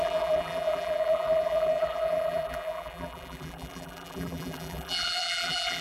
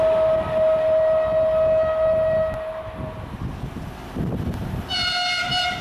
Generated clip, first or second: first